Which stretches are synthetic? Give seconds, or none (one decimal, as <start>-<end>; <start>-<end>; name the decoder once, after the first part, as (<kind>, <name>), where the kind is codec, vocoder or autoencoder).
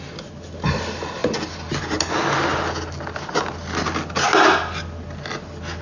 none